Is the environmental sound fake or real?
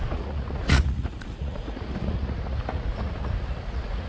fake